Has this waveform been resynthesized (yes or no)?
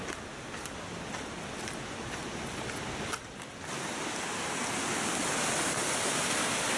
no